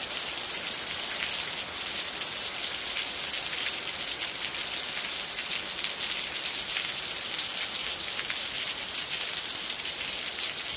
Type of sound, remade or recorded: recorded